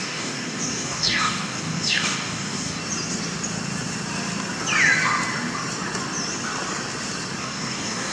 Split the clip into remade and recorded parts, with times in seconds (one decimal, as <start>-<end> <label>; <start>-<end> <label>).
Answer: 0.0-2.8 remade; 2.8-7.4 recorded; 7.4-8.1 remade